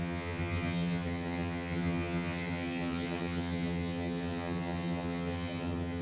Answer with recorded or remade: remade